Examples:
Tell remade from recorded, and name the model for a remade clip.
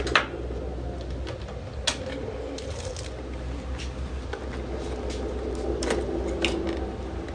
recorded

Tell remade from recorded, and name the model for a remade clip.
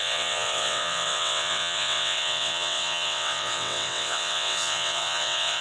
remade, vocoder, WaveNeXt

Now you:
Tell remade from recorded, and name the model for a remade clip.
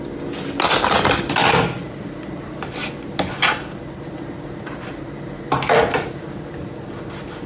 recorded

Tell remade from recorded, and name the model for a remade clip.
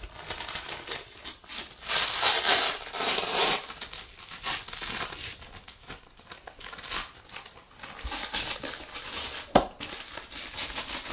recorded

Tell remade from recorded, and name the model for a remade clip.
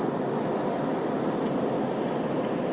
recorded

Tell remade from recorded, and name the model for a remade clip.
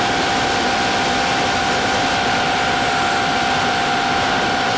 recorded